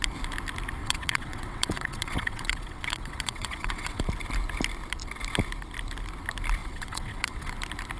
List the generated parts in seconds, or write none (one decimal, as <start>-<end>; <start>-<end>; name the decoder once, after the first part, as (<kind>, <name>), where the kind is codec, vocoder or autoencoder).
0.8-4.0 (vocoder, WaveNeXt); 6.6-7.5